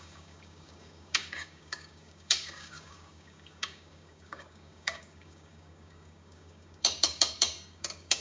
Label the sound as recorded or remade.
remade